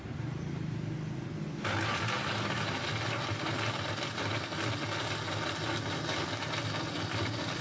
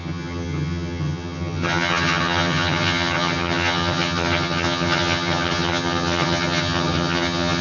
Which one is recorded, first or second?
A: first